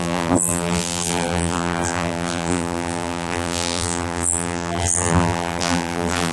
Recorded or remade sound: remade